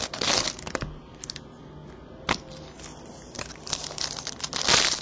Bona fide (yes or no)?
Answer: yes